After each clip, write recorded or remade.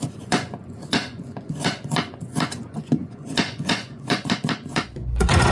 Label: remade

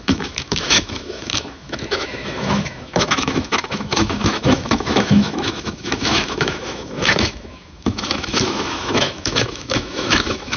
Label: remade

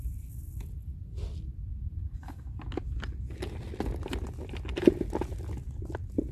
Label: recorded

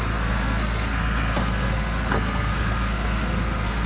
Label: remade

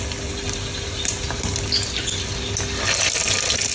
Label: recorded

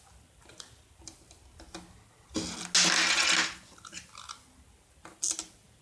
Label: recorded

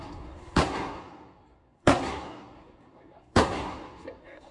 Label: remade